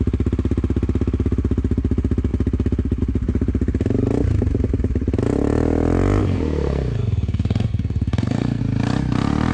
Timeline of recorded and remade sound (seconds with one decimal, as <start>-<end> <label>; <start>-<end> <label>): 0.0-6.2 recorded; 6.2-8.6 remade; 8.6-9.5 recorded